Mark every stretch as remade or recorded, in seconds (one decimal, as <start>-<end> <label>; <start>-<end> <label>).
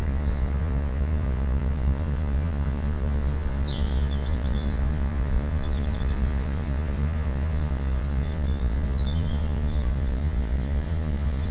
0.0-11.5 remade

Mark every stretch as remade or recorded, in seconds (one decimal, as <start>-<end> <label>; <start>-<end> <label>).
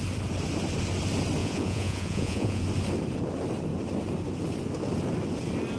0.0-1.4 recorded; 1.4-2.6 remade; 2.6-5.8 recorded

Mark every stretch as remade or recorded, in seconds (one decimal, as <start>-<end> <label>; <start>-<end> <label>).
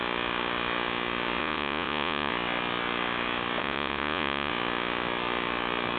0.0-1.4 recorded; 1.4-2.3 remade; 2.3-3.6 recorded; 3.6-4.5 remade; 4.5-6.0 recorded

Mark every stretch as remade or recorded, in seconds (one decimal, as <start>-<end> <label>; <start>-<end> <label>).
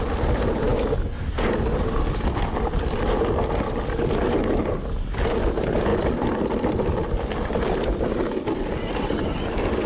0.0-9.9 recorded